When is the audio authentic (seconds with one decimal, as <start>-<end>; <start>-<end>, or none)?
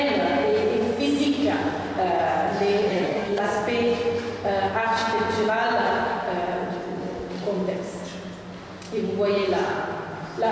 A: 0.0-2.9; 3.4-10.5